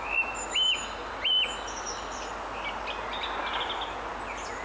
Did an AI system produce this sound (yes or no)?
no